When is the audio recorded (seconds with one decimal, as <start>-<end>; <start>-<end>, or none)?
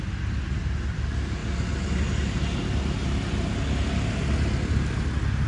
0.0-5.5